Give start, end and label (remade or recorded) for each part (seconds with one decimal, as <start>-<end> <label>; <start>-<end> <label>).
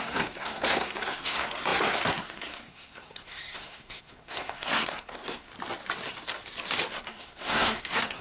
0.0-5.5 remade; 5.5-6.9 recorded; 6.9-8.2 remade